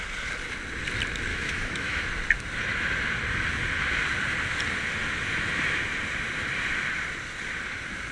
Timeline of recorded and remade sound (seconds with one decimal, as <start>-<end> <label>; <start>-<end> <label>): 0.0-1.3 recorded; 1.3-2.0 remade; 2.0-8.1 recorded